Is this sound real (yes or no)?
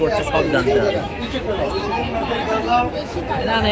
no